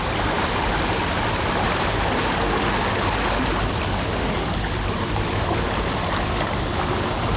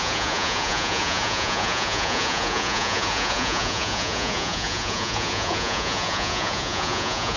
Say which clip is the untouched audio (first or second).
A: first